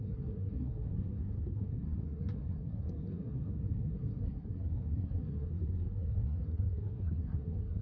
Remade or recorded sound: remade